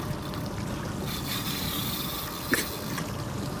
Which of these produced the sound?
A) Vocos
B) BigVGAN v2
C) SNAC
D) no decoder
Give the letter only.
D